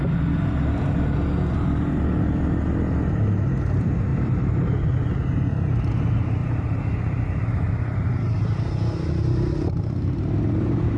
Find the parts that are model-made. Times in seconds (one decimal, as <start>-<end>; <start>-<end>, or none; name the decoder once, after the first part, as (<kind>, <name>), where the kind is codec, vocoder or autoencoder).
4.1-4.7 (vocoder, BigVGAN v2); 6.4-11.0

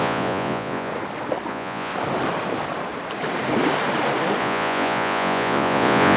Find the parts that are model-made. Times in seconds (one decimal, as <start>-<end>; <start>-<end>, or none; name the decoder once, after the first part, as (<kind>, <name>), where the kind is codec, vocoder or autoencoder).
0.0-0.9 (vocoder, Vocos); 1.5-1.9; 4.4-6.2

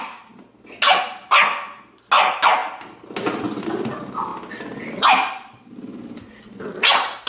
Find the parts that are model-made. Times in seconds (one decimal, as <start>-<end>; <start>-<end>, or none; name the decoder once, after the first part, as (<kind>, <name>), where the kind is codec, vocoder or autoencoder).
none

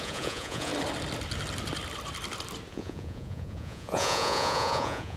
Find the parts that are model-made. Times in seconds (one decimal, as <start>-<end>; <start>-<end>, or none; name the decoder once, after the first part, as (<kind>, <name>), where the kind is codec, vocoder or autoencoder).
0.0-0.7 (vocoder, Vocos); 2.7-5.2

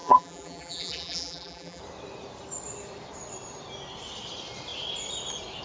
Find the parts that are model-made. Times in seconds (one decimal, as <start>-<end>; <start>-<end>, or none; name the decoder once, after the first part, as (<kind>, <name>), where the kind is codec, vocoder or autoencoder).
0.0-1.8 (vocoder, BigVGAN v2)

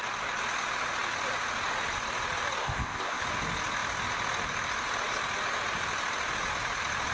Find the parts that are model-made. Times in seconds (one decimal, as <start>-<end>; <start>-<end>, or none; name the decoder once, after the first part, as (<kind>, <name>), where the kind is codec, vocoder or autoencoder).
2.6-3.2 (codec, ZipCodec)

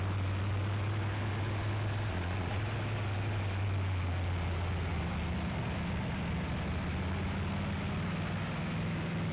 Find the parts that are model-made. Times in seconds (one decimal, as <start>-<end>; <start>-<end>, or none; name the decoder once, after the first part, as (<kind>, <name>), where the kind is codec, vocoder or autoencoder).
2.1-2.6 (vocoder, Vocos)

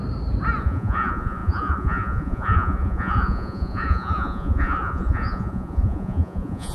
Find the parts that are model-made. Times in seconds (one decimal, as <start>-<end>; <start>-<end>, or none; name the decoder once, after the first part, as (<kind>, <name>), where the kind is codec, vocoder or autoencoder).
0.6-6.7 (vocoder, Vocos)